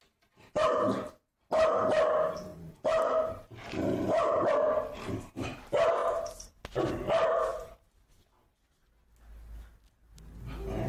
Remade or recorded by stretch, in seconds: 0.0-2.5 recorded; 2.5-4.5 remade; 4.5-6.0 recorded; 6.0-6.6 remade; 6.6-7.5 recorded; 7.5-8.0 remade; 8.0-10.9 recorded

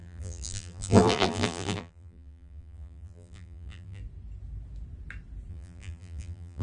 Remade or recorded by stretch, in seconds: 0.0-4.0 remade; 4.0-5.5 recorded; 5.5-6.6 remade

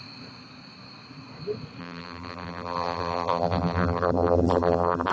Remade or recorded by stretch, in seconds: 0.0-1.8 recorded; 1.8-5.1 remade